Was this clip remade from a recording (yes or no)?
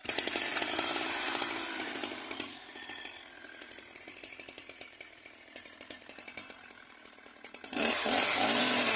yes